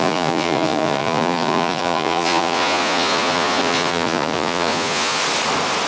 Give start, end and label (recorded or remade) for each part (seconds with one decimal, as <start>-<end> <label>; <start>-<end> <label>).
0.0-5.2 remade; 5.2-5.9 recorded